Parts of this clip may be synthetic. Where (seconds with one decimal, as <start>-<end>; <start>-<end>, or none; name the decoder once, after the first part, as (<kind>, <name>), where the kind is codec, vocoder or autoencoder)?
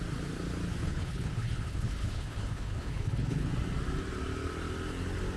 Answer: 0.8-3.5 (codec, HILCodec)